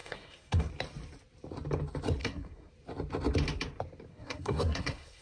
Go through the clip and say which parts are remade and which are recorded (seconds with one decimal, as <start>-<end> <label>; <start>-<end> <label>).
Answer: 0.0-0.7 remade; 0.7-2.2 recorded; 2.2-2.7 remade; 2.7-4.1 recorded; 4.1-5.2 remade